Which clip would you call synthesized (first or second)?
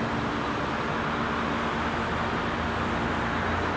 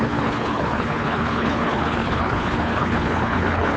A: second